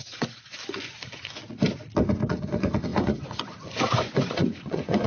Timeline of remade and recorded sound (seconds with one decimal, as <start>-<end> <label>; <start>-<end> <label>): 0.0-1.4 remade; 1.4-2.3 recorded; 2.3-5.1 remade